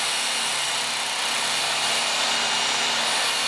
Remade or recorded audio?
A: recorded